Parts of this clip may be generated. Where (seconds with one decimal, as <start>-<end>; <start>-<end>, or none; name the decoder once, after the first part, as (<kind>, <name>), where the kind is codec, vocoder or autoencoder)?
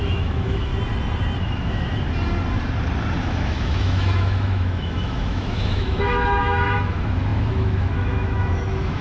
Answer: 0.0-0.7 (autoencoder, DAC-VAE); 1.4-1.9; 3.2-9.0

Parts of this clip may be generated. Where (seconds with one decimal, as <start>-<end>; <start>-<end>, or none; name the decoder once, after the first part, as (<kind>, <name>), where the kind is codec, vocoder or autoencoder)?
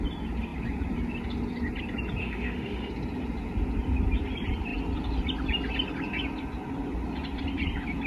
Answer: 2.2-2.9 (autoencoder, DAC-VAE)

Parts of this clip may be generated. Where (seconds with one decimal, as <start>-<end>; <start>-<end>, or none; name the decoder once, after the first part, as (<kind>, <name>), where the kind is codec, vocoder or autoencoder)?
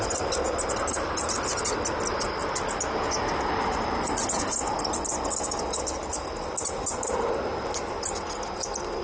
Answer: none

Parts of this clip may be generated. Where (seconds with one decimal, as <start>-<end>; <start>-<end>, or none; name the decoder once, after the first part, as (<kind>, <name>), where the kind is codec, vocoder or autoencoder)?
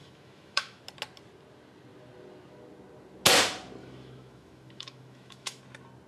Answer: 0.0-0.8 (autoencoder, DAC-VAE); 3.8-5.6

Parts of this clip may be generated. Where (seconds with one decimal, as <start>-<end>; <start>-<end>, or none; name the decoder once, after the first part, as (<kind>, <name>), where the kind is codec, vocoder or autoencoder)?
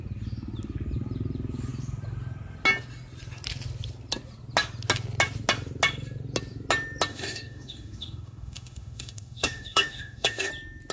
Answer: 7.1-10.5 (autoencoder, DAC-VAE)